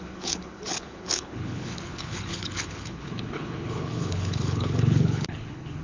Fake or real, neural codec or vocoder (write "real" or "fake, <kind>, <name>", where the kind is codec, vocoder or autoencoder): fake, codec, HILCodec